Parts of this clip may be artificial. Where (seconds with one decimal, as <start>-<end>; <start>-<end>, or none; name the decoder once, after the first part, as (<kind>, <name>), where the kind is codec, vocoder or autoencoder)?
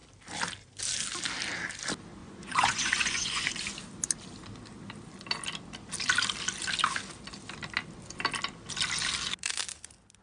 2.2-3.5 (vocoder, Vocos)